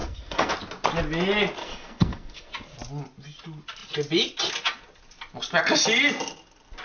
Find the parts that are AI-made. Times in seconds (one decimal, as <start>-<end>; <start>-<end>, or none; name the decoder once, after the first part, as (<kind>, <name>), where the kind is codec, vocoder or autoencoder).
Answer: 0.0-0.5 (codec, SNAC); 1.6-2.5